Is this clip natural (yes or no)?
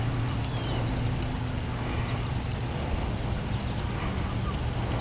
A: yes